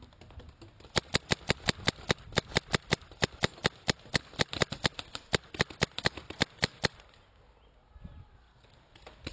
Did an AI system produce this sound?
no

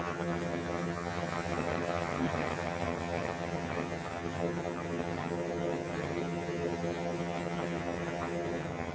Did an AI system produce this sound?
yes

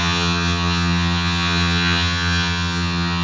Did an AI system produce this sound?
yes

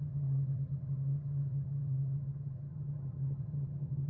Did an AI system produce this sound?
yes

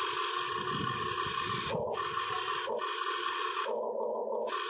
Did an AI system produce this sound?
no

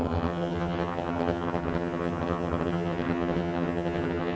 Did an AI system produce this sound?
yes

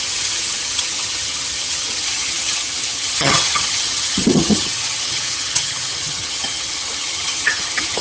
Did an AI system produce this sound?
yes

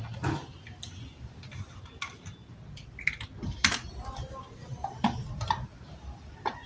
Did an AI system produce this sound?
no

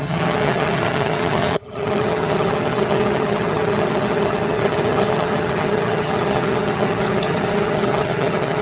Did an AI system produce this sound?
yes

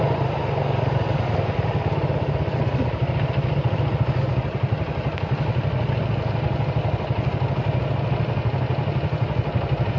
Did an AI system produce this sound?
no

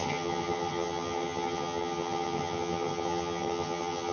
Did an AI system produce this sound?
yes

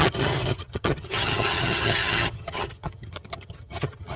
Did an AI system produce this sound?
yes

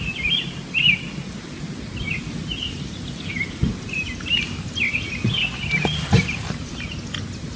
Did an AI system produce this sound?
no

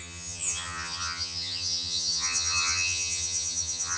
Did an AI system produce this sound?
yes